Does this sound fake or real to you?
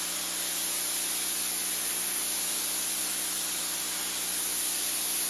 real